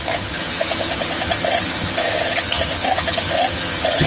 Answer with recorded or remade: remade